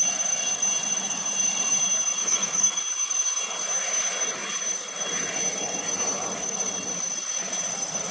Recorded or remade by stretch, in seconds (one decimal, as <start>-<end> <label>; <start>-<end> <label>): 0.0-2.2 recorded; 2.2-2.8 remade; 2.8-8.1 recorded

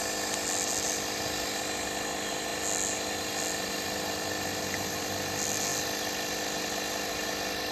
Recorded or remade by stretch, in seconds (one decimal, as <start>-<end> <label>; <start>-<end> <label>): 0.0-7.7 recorded

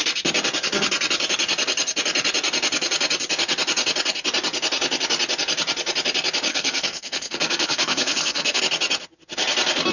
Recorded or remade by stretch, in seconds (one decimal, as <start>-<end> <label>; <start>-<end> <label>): 0.0-6.5 recorded; 6.5-8.6 remade; 8.6-9.9 recorded